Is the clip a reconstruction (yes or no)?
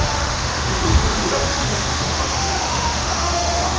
yes